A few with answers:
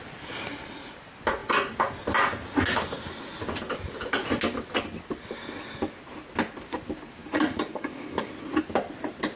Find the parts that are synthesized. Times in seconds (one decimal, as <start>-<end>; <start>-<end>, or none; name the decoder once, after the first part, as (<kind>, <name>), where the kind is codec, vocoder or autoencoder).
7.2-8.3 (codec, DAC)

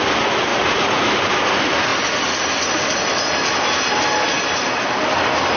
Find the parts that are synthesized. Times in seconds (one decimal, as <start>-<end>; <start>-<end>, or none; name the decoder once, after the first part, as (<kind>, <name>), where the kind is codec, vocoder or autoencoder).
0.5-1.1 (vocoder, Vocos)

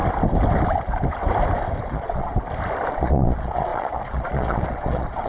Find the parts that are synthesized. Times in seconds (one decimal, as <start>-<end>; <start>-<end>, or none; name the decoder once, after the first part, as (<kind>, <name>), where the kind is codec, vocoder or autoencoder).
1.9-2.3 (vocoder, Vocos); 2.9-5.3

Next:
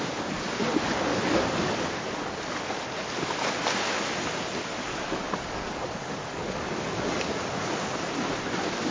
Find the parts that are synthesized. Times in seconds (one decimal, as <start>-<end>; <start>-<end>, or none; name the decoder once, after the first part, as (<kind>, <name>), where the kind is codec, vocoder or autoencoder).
1.1-1.7 (codec, DAC); 4.9-7.4

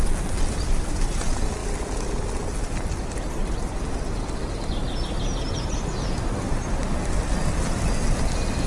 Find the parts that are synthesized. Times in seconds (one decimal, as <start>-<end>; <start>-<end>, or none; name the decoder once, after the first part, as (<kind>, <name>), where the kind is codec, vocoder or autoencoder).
none

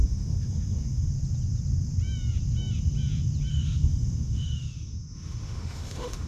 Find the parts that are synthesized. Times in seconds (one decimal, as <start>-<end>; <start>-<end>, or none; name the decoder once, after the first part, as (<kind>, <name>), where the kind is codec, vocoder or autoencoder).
0.0-1.1 (autoencoder, DAC-VAE); 3.5-6.3

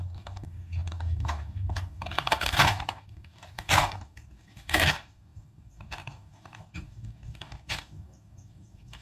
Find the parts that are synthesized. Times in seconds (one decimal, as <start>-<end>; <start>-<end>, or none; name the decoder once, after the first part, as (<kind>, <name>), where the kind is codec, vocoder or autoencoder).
0.0-9.0 (codec, DAC)